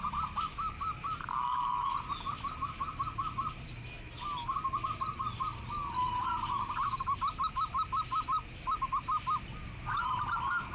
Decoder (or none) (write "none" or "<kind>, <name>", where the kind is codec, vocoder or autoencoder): none